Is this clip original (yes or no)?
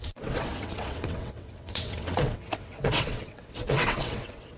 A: no